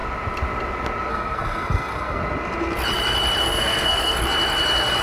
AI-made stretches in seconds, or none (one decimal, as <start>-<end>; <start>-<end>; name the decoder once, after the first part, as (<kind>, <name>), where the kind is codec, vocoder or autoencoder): 1.1-2.2 (codec, SNAC); 3.4-4.2